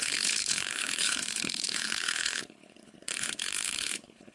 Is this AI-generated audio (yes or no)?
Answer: yes